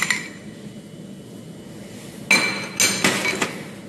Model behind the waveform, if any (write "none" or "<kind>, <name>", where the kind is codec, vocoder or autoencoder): none